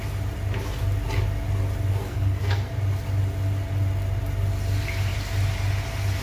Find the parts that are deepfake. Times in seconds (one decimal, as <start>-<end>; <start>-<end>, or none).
1.9-2.7